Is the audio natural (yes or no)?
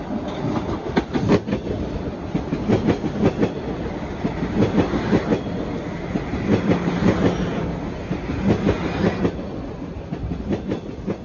yes